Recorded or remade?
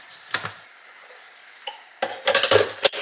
recorded